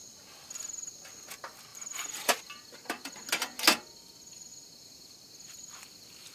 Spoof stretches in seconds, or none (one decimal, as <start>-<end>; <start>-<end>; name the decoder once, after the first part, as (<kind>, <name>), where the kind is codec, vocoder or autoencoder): 1.7-2.4 (vocoder, BigVGAN v2)